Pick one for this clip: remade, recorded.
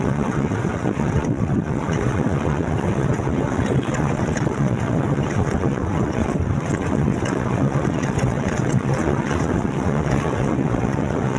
remade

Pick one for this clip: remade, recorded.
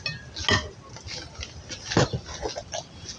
recorded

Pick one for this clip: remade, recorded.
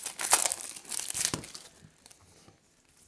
recorded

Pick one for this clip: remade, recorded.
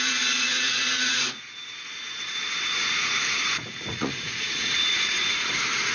remade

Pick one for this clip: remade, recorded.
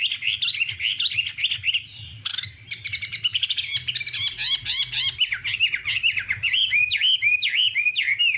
recorded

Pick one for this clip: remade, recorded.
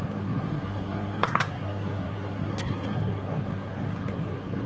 remade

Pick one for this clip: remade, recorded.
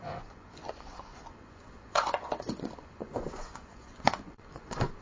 remade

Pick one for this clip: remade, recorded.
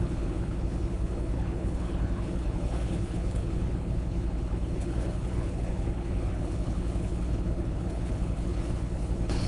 remade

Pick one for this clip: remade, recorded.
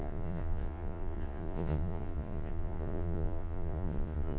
remade